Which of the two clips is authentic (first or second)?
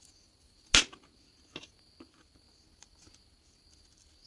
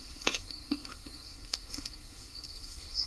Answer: first